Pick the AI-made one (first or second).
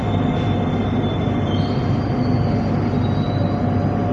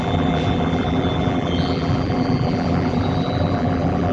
second